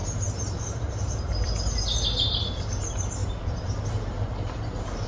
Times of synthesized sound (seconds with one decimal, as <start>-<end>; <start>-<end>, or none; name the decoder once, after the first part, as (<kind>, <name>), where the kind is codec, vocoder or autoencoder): 0.0-1.6 (vocoder, BigVGAN v2); 3.2-3.9

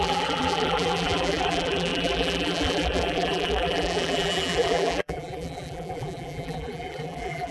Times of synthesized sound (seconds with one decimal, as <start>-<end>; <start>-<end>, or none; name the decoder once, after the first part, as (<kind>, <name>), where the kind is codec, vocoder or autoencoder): 0.0-7.5 (vocoder, BigVGAN v2)

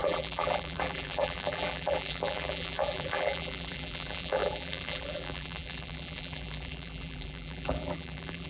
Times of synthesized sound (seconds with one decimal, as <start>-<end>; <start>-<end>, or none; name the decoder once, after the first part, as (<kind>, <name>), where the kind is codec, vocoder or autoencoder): 0.0-8.5 (vocoder, BigVGAN v2)

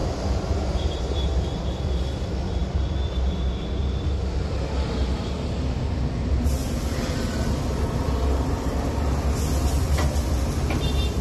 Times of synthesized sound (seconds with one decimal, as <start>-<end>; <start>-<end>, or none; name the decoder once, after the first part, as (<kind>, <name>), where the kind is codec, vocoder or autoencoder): 0.0-1.8 (vocoder, BigVGAN v2)

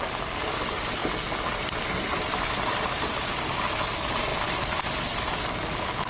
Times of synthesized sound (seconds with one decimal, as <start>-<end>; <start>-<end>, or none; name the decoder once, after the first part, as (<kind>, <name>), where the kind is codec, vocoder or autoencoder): 0.0-1.0 (vocoder, BigVGAN v2); 1.9-6.1

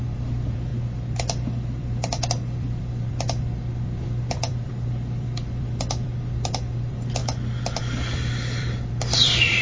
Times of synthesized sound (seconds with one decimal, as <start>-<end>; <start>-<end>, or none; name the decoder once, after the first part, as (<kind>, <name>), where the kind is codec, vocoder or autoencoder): 0.0-7.2 (vocoder, BigVGAN v2); 7.8-9.6

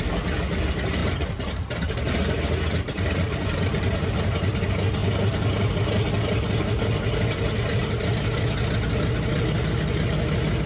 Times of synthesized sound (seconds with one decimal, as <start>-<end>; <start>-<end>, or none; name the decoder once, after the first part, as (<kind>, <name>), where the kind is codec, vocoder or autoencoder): 1.0-2.1 (vocoder, BigVGAN v2)